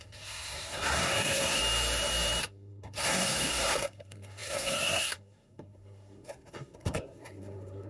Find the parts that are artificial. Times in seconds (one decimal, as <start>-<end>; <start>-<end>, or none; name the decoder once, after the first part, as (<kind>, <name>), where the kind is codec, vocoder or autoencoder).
0.0-1.6 (codec, SNAC); 2.4-7.9